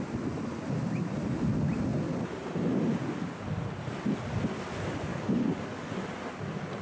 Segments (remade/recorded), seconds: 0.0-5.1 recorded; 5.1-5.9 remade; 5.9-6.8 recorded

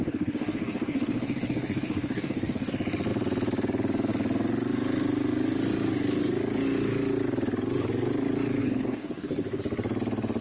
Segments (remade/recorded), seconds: 0.0-2.7 remade; 2.7-8.6 recorded; 8.6-9.6 remade; 9.6-10.4 recorded

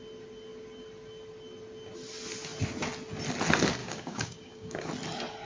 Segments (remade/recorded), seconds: 0.0-3.8 recorded; 3.8-4.9 remade; 4.9-5.5 recorded

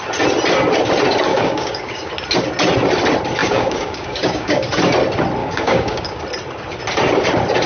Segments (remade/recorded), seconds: 0.0-1.3 recorded; 1.3-2.1 remade; 2.1-3.4 recorded; 3.4-4.7 remade; 4.7-5.4 recorded; 5.4-6.2 remade; 6.2-7.7 recorded

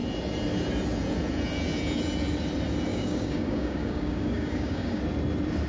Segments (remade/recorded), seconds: 0.0-2.9 recorded; 2.9-5.0 remade; 5.0-5.7 recorded

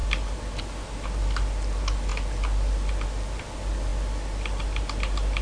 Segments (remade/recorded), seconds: 0.0-5.4 recorded